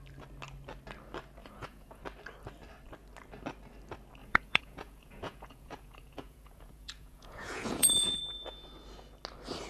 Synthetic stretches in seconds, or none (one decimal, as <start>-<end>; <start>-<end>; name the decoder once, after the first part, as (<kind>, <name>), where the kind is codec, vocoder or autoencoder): 1.4-2.0 (vocoder, Vocos); 4.2-8.2